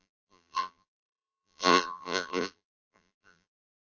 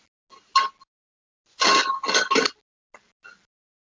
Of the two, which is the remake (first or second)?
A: first